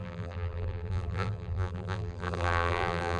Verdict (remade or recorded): remade